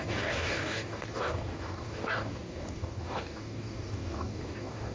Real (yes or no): no